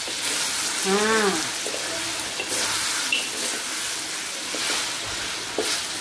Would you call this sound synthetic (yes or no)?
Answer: no